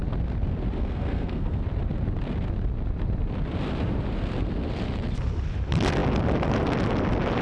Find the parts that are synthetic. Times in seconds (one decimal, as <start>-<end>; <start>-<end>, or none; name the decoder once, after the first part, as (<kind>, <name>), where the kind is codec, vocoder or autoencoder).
0.8-1.6 (codec, SNAC)